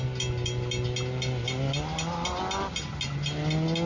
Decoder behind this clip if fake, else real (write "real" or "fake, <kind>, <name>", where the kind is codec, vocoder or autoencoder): real